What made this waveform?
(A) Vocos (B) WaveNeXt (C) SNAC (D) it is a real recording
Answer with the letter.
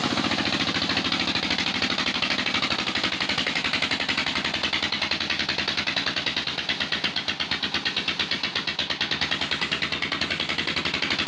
D